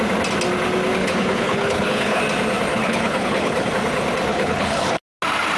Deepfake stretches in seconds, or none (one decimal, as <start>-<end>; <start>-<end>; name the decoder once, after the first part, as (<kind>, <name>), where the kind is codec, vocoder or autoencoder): 1.0-2.2 (codec, HILCodec); 2.7-3.7; 4.3-5.0